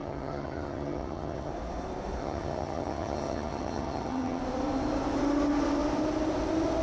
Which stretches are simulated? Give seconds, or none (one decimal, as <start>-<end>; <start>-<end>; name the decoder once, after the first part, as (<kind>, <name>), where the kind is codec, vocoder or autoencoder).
0.0-1.5 (vocoder, HiFi-GAN); 2.2-4.4

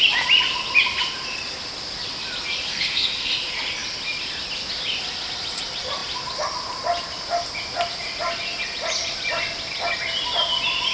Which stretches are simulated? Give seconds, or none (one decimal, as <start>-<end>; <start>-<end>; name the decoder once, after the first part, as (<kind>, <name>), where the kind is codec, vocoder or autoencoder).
2.7-3.3 (codec, SNAC)

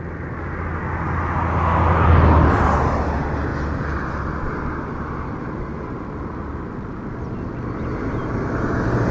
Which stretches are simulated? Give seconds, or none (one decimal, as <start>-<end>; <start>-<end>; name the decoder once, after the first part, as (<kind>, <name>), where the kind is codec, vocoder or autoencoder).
none

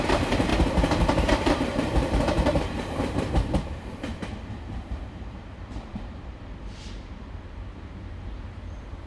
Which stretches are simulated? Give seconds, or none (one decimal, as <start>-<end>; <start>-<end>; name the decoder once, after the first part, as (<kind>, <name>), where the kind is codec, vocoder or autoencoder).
0.0-9.1 (vocoder, BigVGAN v2)